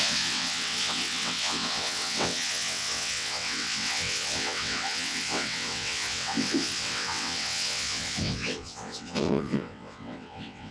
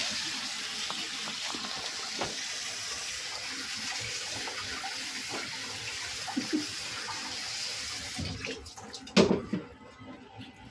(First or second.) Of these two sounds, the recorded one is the second